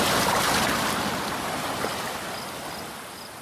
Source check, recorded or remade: recorded